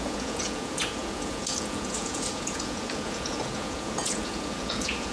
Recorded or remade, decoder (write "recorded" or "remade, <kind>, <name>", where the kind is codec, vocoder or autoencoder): remade, vocoder, Vocos